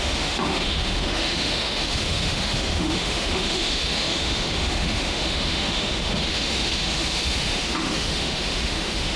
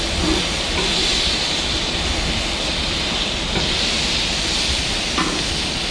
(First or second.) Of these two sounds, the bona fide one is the second